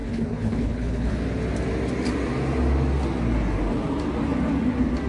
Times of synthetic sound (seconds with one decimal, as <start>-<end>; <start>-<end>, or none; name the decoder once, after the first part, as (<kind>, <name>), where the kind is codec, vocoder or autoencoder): 0.0-1.1 (codec, HILCodec)